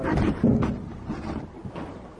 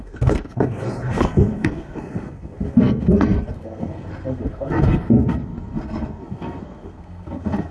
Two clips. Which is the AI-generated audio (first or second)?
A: second